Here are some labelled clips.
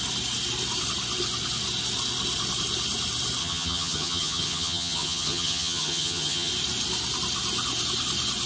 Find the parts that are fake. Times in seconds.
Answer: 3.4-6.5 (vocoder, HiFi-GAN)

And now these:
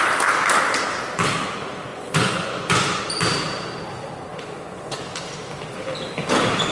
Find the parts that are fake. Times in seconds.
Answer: 1.9-3.0 (vocoder, Vocos); 4.3-5.0

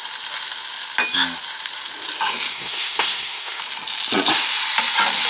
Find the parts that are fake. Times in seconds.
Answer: 2.5-3.6 (codec, SNAC)

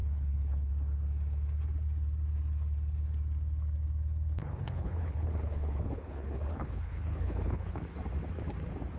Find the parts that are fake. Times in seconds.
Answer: 0.0-0.7 (codec, HILCodec); 4.4-7.8

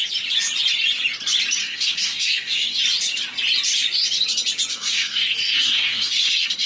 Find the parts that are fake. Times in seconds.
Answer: 1.6-2.8 (codec, SNAC); 4.7-6.7

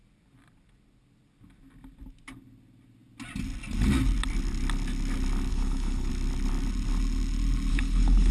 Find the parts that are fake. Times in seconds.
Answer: 5.5-6.1 (codec, HILCodec); 7.7-8.3

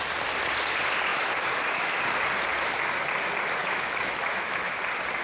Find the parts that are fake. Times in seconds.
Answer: 1.1-2.0 (autoencoder, DAC-VAE); 3.6-4.8